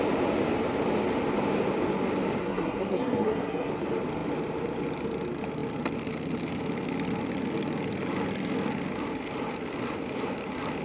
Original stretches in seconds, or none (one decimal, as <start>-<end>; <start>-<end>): 0.0-2.4; 3.7-10.8